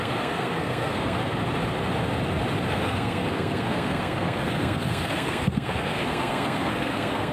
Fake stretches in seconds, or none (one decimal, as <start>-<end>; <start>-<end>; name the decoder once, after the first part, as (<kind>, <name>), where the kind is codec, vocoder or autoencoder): 0.0-1.3 (codec, SNAC); 2.7-7.3